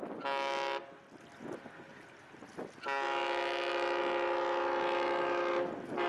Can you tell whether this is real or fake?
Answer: real